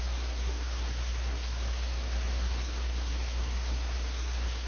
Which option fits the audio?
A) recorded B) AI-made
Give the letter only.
B